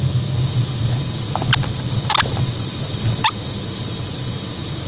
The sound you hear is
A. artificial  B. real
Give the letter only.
B